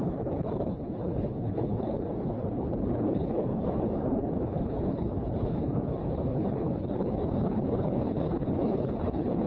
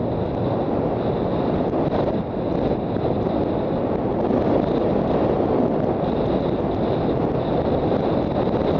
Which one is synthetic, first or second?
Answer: first